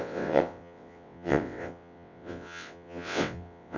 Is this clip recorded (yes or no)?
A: no